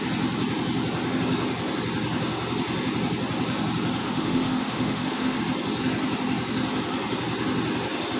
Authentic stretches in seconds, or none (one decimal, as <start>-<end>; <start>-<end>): 0.0-4.0; 5.4-8.2